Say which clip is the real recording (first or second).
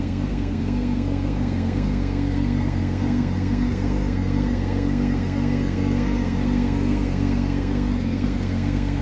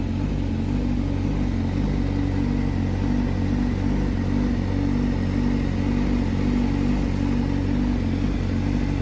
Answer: second